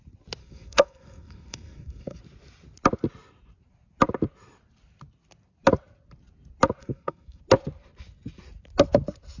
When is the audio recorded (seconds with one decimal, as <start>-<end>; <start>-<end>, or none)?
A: 0.0-0.4; 2.2-6.8; 7.4-9.4